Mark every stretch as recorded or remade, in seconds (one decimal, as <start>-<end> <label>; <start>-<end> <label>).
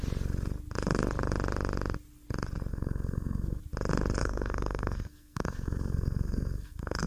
0.0-2.7 recorded; 2.7-3.6 remade; 3.6-4.2 recorded; 4.2-7.1 remade